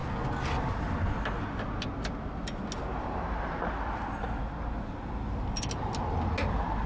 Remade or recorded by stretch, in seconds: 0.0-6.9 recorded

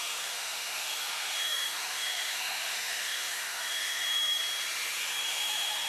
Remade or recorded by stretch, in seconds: 0.0-4.4 remade; 4.4-5.2 recorded; 5.2-5.9 remade

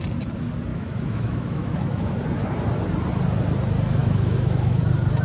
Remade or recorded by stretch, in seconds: 0.0-0.7 recorded; 0.7-2.1 remade; 2.1-4.0 recorded; 4.0-4.8 remade; 4.8-5.2 recorded

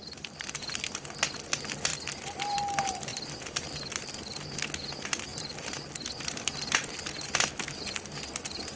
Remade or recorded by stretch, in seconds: 0.0-0.7 remade; 0.7-1.9 recorded; 1.9-2.6 remade; 2.6-3.1 recorded; 3.1-4.0 remade; 4.0-5.3 recorded; 5.3-7.1 remade; 7.1-8.8 recorded

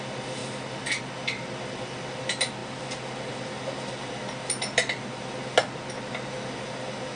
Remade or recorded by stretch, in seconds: 0.0-7.2 recorded

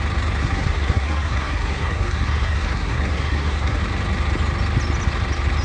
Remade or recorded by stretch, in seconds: 0.0-0.4 recorded; 0.4-3.8 remade; 3.8-5.6 recorded